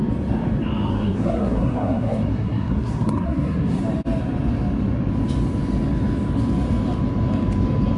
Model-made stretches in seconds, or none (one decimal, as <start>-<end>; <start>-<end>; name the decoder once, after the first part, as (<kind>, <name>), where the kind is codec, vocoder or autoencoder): 0.9-3.8 (codec, SNAC)